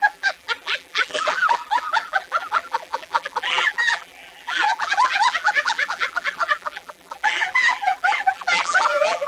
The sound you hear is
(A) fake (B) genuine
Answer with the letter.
A